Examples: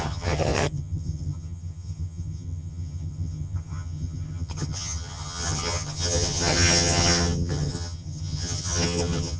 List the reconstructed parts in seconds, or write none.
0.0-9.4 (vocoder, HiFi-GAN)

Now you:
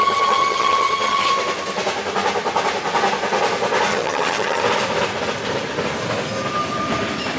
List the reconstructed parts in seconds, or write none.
0.0-1.3 (vocoder, HiFi-GAN); 3.9-4.6